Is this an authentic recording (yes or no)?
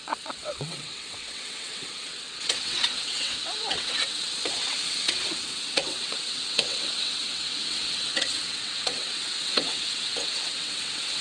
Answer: no